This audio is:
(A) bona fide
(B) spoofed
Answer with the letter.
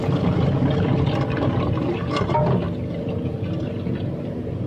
A